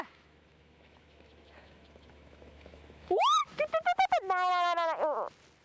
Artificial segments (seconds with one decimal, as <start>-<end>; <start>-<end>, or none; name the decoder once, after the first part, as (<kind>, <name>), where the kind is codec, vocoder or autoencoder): 0.0-3.4 (autoencoder, DAC-VAE)